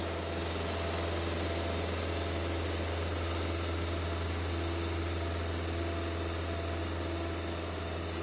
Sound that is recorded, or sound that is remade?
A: recorded